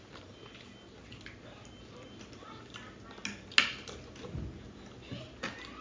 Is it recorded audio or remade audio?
recorded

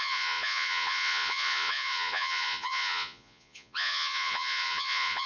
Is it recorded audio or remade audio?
remade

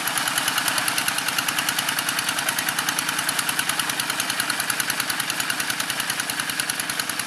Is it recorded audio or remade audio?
recorded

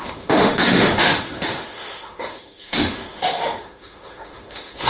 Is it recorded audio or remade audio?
remade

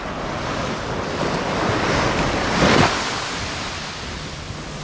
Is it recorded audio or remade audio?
recorded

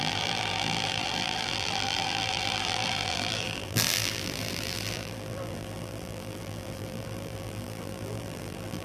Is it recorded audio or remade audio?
remade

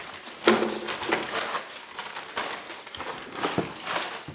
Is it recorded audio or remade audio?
recorded